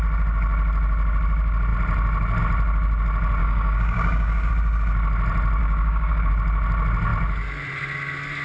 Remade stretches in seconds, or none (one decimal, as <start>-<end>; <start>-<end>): 3.4-4.5; 5.6-6.3